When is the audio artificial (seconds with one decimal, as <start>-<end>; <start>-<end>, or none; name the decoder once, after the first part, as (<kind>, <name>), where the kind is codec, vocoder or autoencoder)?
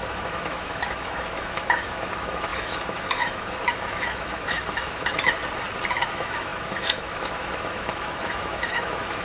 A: 0.0-5.4 (autoencoder, DAC-VAE); 5.9-9.2